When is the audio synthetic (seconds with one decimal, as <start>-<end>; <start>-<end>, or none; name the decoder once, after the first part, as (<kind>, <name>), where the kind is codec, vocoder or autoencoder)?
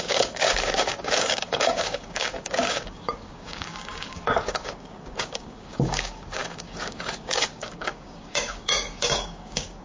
0.0-9.8 (codec, DAC)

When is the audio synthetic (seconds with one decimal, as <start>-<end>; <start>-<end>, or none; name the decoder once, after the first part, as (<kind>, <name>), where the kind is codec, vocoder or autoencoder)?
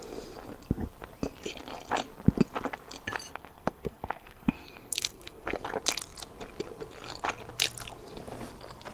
3.3-5.6 (codec, SNAC)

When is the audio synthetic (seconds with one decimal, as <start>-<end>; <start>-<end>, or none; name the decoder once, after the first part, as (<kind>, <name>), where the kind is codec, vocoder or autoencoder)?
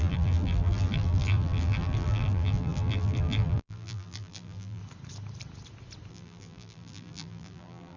0.0-4.8 (vocoder, BigVGAN v2); 6.1-8.0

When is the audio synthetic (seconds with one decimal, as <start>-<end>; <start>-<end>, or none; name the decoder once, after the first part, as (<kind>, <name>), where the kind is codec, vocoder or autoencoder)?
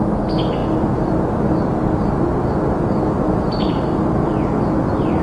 none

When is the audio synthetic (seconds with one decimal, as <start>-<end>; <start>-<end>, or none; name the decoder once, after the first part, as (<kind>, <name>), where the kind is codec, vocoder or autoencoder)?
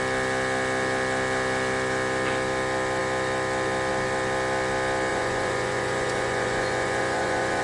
5.1-7.6 (vocoder, Vocos)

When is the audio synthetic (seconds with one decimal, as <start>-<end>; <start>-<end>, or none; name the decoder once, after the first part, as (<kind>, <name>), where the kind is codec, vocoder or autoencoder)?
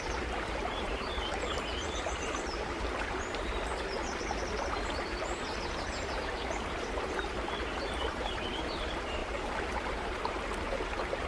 0.0-3.7 (vocoder, BigVGAN v2); 4.7-11.3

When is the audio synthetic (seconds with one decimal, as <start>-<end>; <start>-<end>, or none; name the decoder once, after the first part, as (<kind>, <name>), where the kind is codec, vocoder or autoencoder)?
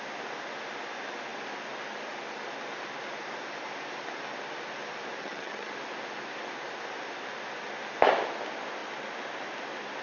5.2-5.7 (vocoder, HiFi-GAN)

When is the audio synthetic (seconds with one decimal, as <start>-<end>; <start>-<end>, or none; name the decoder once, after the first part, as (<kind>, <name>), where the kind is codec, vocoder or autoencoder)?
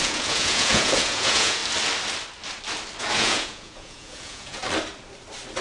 0.0-1.6 (vocoder, Vocos); 3.0-4.6